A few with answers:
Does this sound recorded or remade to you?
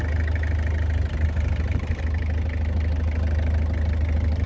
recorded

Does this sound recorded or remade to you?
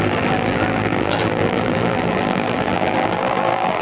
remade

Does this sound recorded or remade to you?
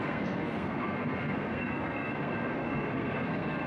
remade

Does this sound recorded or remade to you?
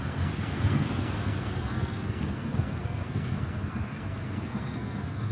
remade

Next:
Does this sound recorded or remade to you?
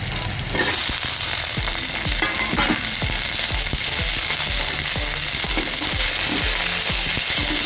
recorded